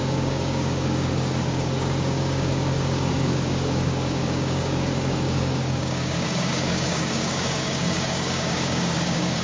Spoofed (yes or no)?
yes